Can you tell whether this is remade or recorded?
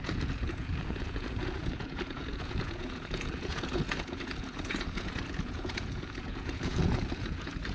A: remade